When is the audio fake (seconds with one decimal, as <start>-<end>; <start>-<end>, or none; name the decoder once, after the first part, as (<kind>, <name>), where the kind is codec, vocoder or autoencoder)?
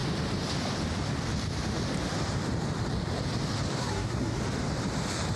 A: 3.8-4.4 (codec, SNAC)